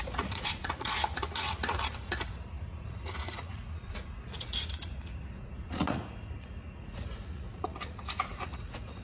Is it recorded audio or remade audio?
remade